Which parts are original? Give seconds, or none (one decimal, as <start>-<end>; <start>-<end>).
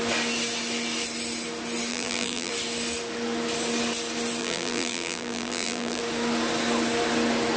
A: 0.0-1.9; 2.5-4.4; 6.0-7.6